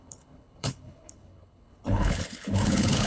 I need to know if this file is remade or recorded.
remade